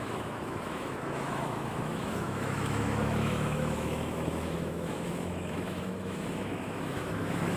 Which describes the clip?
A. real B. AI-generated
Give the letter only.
B